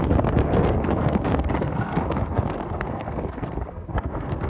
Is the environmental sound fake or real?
fake